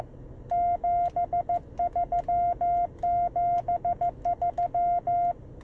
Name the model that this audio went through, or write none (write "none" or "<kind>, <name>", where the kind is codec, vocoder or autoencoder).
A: none